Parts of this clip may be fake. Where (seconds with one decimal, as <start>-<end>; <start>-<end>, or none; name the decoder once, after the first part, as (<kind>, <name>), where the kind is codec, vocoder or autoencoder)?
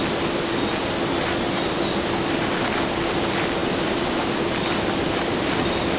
none